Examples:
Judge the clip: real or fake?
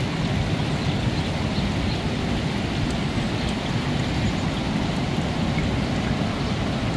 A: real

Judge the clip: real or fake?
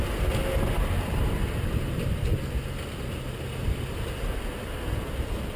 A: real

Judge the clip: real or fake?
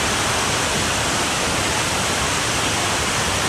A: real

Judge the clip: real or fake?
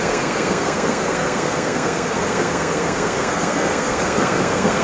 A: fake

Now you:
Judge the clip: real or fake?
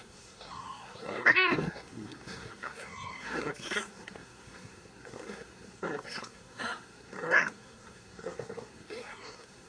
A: fake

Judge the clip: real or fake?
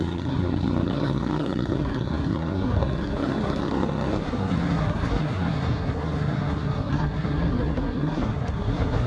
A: fake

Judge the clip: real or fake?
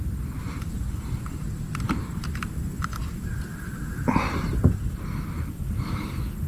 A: real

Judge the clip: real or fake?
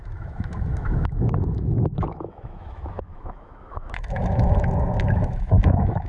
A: fake